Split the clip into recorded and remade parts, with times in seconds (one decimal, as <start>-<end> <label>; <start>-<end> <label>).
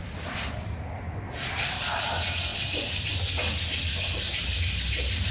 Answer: 0.0-5.3 recorded